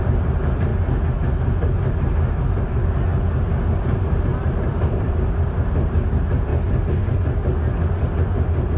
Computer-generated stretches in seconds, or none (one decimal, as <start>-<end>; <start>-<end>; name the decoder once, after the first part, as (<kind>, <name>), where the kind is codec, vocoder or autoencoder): 0.0-0.7 (vocoder, BigVGAN v2); 2.6-3.1; 3.7-6.5